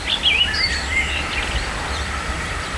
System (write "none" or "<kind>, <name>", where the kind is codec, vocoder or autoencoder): vocoder, BigVGAN v2